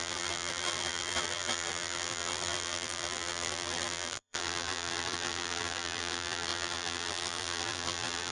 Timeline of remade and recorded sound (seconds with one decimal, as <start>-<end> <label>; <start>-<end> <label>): 0.0-8.3 remade